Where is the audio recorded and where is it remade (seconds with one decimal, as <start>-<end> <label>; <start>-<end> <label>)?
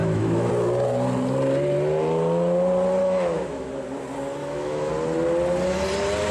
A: 0.0-0.5 remade; 0.5-3.0 recorded; 3.0-3.7 remade; 3.7-4.4 recorded; 4.4-4.9 remade; 4.9-6.3 recorded